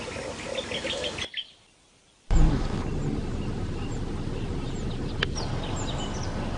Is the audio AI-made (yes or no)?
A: no